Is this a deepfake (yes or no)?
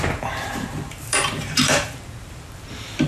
yes